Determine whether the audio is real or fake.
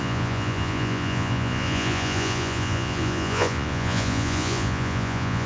fake